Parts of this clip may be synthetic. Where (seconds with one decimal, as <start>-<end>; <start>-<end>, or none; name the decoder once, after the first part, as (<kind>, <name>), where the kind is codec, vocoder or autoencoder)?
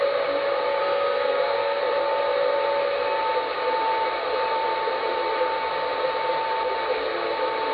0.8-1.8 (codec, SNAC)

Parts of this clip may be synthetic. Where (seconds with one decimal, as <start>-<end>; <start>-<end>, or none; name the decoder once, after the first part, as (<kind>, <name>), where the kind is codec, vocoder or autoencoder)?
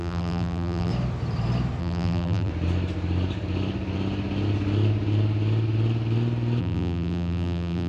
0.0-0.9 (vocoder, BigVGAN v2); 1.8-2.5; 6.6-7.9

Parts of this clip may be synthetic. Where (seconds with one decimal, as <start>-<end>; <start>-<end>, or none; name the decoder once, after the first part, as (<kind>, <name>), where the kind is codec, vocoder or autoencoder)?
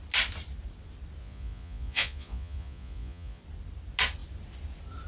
1.2-3.4 (vocoder, Vocos)